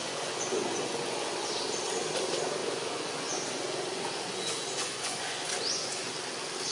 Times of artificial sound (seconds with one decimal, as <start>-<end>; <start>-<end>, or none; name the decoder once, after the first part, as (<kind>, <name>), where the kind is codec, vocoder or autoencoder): 0.0-1.5 (vocoder, Vocos); 2.6-6.1